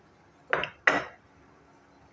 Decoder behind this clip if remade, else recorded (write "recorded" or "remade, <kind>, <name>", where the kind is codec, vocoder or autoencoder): recorded